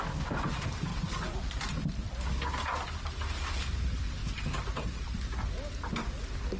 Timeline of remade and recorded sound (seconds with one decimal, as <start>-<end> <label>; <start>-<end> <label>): 0.0-4.2 recorded; 4.2-4.8 remade; 4.8-6.6 recorded